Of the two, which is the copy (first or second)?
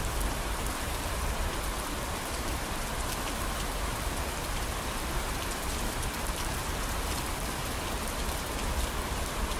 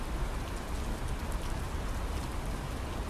first